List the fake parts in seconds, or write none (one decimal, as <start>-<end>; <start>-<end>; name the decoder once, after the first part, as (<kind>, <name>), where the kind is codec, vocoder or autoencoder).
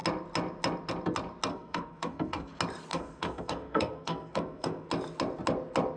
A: 1.5-2.5 (codec, SNAC); 2.9-4.9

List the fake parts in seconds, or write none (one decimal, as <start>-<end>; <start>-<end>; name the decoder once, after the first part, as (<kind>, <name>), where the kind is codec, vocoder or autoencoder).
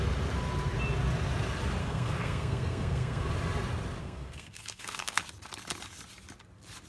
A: 1.8-3.3 (codec, SNAC); 4.0-5.2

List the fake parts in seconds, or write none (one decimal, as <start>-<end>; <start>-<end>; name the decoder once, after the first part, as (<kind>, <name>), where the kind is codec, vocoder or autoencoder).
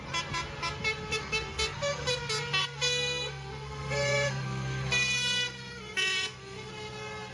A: 1.2-2.1 (codec, SNAC); 2.6-6.7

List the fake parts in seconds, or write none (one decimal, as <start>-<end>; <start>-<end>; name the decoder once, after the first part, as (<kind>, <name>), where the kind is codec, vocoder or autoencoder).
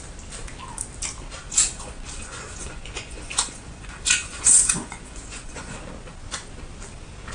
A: 1.4-5.8 (vocoder, Vocos)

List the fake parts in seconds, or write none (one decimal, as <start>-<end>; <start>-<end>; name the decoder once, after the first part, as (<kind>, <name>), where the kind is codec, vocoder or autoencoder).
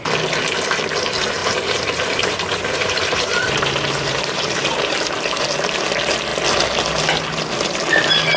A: 1.4-5.5 (vocoder, BigVGAN v2)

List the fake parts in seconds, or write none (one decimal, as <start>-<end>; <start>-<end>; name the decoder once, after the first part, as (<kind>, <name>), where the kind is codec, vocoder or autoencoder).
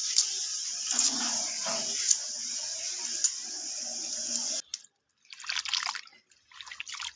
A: none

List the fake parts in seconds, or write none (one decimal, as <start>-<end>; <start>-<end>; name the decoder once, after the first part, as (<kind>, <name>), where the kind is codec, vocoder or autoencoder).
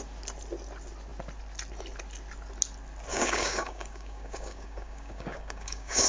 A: 3.1-6.1 (codec, DAC)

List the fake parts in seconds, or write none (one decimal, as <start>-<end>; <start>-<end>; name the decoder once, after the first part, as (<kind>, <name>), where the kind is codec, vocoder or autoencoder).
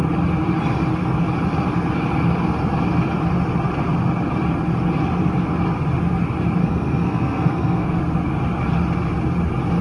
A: 6.6-8.0 (codec, SNAC)